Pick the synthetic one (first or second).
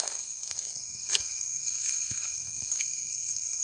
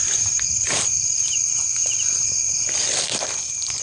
first